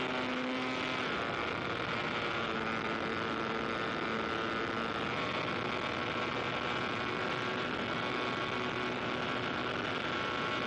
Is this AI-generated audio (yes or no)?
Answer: no